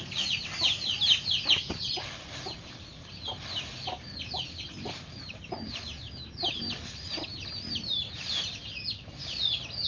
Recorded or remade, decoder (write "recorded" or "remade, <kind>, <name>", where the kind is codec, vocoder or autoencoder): recorded